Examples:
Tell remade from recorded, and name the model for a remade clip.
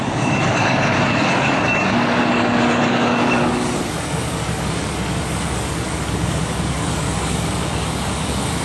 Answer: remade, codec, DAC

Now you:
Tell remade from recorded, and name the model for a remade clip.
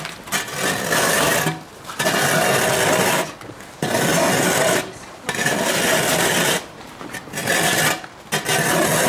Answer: recorded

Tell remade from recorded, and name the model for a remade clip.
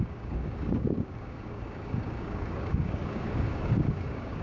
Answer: remade, codec, DAC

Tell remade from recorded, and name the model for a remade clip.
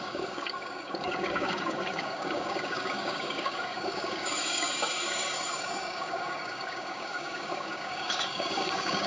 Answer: remade, codec, DAC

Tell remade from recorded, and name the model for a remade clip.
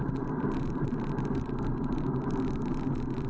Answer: recorded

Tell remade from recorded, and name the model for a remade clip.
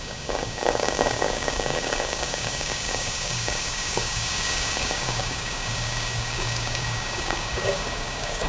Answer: remade, codec, DAC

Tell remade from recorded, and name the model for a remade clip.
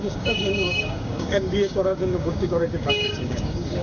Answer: remade, codec, DAC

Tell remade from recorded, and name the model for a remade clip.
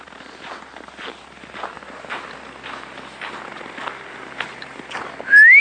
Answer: recorded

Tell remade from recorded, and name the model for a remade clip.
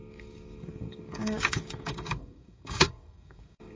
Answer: remade, codec, DAC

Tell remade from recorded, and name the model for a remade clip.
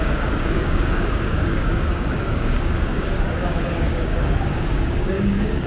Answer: remade, codec, DAC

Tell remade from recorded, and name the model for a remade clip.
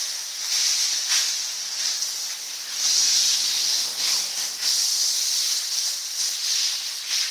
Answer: recorded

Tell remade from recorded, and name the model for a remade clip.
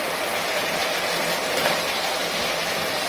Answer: recorded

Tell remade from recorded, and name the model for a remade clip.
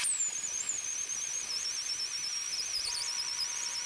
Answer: recorded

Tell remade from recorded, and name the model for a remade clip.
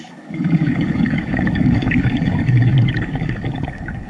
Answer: remade, codec, DAC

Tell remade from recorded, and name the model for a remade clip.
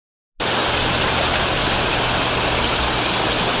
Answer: recorded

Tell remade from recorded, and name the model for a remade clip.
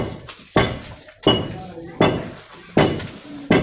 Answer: recorded